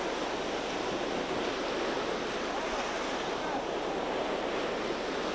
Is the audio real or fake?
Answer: real